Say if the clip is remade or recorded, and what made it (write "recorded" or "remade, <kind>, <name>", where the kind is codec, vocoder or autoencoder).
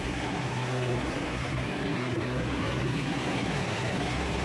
remade, codec, SNAC